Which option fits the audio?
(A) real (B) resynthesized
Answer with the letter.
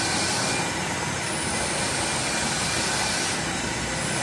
A